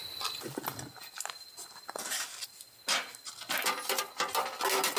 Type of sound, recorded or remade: recorded